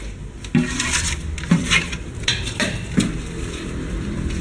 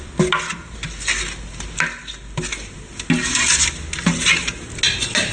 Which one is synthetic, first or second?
first